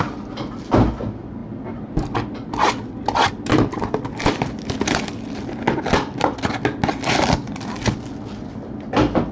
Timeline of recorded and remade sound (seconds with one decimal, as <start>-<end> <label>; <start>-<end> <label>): 0.0-9.3 recorded